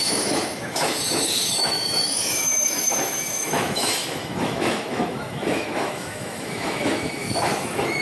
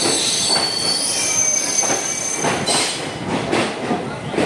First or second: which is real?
second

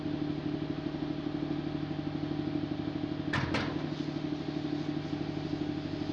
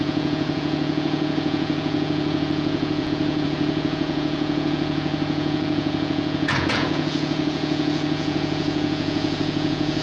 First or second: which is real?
first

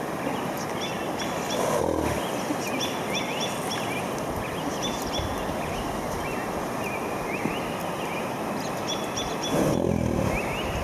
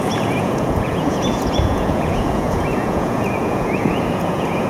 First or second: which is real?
first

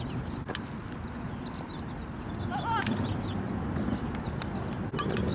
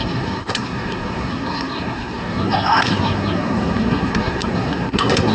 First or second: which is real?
first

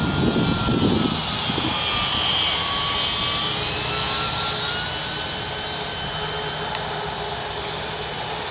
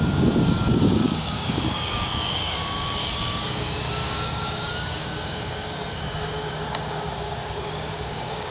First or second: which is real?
first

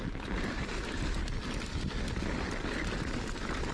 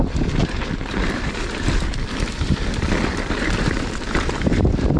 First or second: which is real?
first